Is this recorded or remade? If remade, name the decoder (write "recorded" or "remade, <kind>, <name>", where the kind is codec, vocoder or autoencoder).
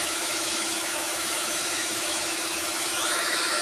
remade, autoencoder, DAC-VAE